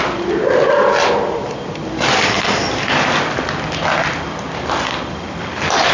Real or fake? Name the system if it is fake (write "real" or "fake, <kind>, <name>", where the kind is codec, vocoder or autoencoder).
real